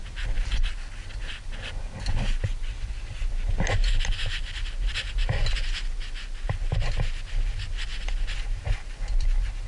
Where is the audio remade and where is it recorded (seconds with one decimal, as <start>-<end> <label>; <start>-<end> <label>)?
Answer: 0.0-9.7 recorded